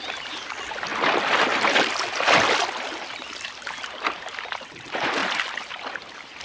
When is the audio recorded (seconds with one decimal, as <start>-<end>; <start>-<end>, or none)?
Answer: 0.0-6.4